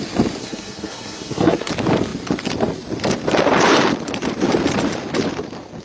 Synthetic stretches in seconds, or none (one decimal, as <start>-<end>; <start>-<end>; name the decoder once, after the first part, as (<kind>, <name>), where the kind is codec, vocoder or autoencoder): 0.4-1.7 (codec, SNAC)

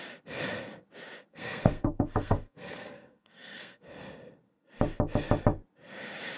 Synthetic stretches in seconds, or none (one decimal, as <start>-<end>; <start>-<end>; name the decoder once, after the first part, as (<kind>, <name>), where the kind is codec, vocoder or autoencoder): 1.3-3.8 (codec, SNAC)

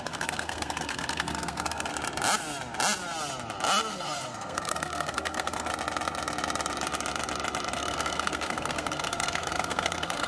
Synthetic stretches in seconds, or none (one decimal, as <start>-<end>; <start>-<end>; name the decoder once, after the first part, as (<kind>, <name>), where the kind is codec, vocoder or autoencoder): 0.0-1.9 (codec, SNAC); 3.9-5.7; 7.7-10.3

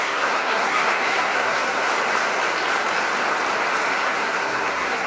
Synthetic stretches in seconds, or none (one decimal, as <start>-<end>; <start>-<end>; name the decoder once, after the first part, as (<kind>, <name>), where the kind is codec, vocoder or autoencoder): 0.0-1.9 (codec, SNAC); 4.0-5.1

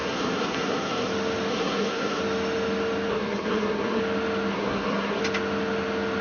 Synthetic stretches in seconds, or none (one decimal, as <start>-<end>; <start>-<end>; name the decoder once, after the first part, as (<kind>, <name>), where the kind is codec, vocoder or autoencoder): 0.0-1.1 (codec, SNAC); 1.5-2.2; 3.1-4.0; 4.5-5.2

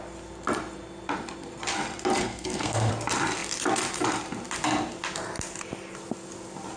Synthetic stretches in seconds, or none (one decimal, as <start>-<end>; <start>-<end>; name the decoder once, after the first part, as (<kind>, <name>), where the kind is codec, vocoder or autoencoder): 2.2-2.9 (codec, SNAC)

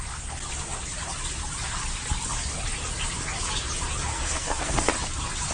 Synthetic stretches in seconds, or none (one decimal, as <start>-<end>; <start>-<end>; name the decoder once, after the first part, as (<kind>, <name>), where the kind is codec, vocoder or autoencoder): 4.1-4.9 (codec, SNAC)

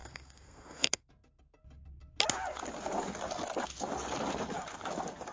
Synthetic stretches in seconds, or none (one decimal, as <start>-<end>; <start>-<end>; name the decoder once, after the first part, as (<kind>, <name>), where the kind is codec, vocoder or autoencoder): 0.0-1.1 (codec, SNAC)